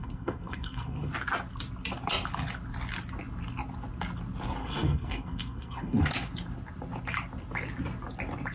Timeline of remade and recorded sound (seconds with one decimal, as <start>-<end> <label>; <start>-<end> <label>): 0.0-1.1 remade; 1.1-4.6 recorded; 4.6-6.0 remade; 6.0-8.5 recorded